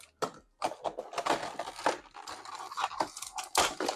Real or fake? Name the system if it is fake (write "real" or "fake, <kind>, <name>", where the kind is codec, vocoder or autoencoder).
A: real